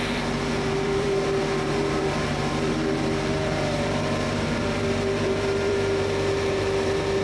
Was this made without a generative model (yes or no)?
no